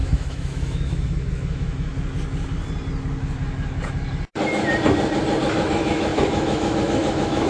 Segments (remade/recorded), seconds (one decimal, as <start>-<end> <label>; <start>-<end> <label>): 0.0-1.9 remade; 1.9-5.4 recorded; 5.4-7.5 remade